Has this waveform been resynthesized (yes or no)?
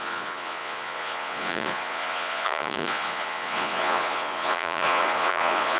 yes